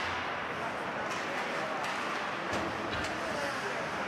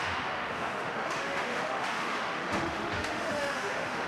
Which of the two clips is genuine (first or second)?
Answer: first